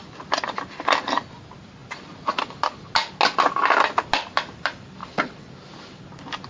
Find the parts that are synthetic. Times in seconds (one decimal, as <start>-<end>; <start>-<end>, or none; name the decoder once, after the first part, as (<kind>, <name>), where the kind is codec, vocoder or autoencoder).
5.0-5.5 (vocoder, WaveNeXt)